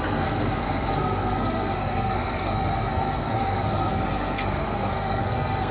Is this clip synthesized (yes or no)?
yes